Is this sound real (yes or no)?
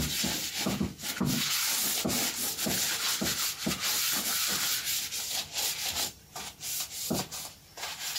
yes